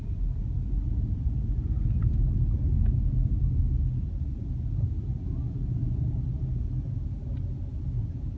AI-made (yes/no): no